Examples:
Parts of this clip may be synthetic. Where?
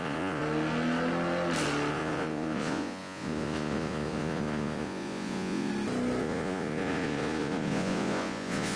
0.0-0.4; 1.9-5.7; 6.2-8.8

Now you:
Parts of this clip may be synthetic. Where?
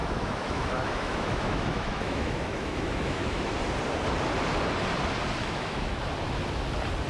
0.0-3.5; 5.4-6.0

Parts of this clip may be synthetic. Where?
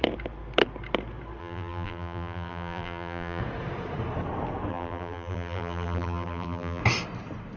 1.4-3.4; 4.7-6.8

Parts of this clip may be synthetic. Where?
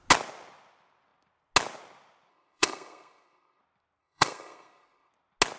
2.3-3.6; 4.0-5.1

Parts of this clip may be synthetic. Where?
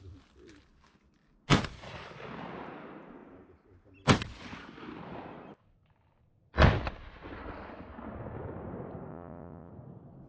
9.1-9.7